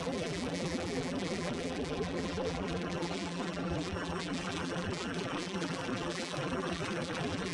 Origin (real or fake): fake